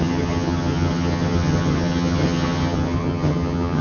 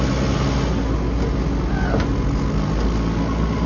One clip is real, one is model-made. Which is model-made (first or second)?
first